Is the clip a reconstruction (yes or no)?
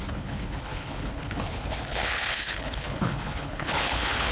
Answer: yes